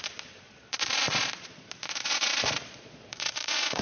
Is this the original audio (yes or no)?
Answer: no